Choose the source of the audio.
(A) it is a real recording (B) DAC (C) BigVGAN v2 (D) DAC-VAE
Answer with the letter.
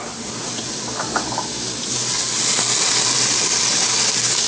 A